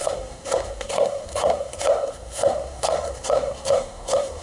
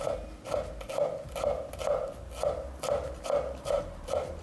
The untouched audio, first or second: second